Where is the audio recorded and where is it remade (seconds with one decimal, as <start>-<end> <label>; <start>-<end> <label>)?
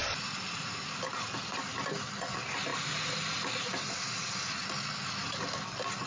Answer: 0.0-6.1 recorded